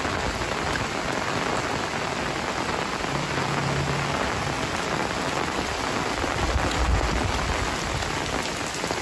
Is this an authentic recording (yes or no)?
yes